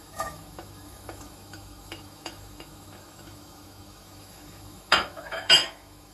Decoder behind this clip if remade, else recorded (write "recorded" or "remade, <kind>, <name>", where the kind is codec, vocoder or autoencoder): remade, autoencoder, DAC-VAE